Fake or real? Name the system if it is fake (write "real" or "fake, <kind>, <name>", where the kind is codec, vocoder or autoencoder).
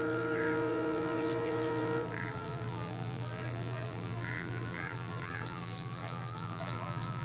fake, vocoder, BigVGAN v2